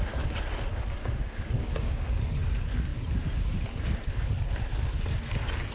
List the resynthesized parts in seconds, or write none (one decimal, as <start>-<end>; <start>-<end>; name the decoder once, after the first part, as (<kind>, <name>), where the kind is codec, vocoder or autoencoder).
1.0-2.2 (codec, DAC)